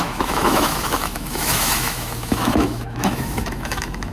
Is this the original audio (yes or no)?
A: no